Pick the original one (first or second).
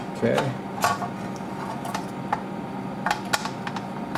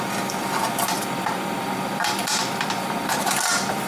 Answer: first